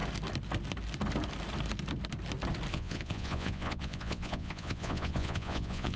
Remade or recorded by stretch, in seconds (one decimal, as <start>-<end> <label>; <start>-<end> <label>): 0.0-2.7 recorded; 2.7-6.0 remade